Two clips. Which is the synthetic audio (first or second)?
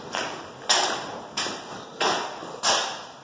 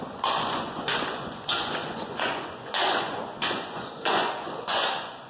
second